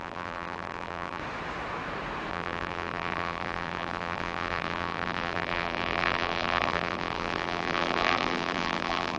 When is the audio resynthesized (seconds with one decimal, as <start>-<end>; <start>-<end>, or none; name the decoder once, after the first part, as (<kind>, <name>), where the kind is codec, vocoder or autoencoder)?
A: 0.0-1.2 (vocoder, BigVGAN v2); 2.3-9.2